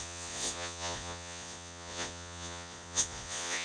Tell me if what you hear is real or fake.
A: fake